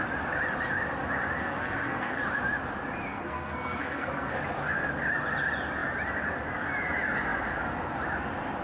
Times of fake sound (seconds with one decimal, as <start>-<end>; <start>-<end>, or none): 1.4-2.2; 3.1-4.3